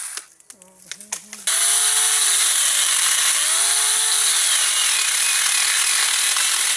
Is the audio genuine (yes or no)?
yes